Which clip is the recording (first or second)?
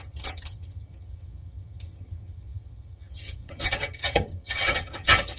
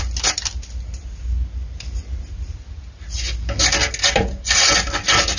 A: second